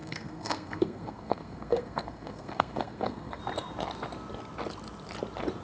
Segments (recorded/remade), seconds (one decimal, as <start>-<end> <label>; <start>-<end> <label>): 0.0-3.4 remade; 3.4-5.6 recorded